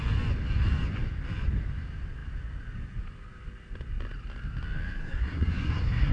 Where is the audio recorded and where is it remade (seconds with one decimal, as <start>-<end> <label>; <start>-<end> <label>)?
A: 0.0-5.0 recorded; 5.0-6.1 remade